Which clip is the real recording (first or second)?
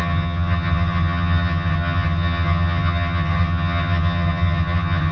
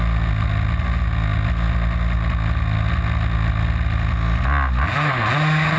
second